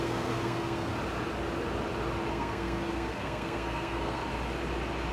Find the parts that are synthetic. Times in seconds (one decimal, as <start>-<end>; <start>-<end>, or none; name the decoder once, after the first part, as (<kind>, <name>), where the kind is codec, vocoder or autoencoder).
0.0-0.9 (codec, SNAC); 2.3-4.2